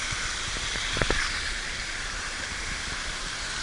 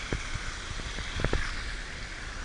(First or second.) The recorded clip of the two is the second